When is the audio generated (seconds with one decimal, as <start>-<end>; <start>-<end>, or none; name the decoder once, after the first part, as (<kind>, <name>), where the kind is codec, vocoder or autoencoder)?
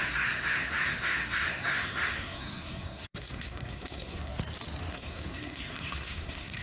0.0-4.3 (codec, SNAC); 4.9-6.6